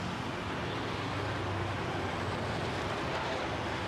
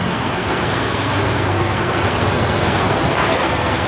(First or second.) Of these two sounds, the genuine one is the first